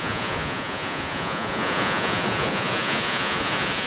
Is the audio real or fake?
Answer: fake